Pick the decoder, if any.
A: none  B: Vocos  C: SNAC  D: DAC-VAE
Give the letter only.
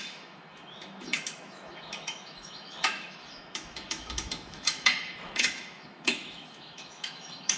D